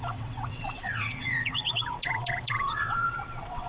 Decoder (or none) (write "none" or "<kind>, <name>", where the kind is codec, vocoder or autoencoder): vocoder, WaveNeXt